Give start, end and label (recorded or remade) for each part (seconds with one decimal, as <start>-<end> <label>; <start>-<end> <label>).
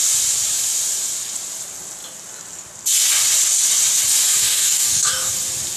0.0-4.3 recorded; 4.3-5.3 remade; 5.3-5.8 recorded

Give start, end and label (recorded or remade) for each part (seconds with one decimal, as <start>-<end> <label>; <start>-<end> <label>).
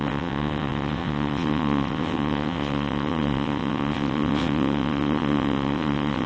0.0-6.3 remade